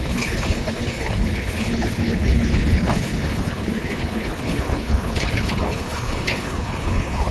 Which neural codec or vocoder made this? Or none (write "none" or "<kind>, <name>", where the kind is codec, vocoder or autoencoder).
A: codec, HILCodec